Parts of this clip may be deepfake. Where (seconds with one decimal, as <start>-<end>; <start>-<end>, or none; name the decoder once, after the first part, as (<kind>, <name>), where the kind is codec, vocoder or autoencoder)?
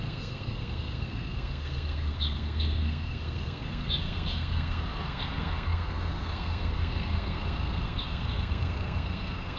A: 0.0-9.6 (codec, SNAC)